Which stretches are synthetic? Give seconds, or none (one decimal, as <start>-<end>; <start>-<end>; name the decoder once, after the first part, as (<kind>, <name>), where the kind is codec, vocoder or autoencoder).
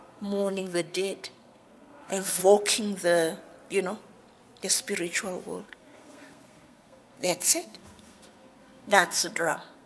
0.0-2.4 (codec, SNAC); 5.6-9.9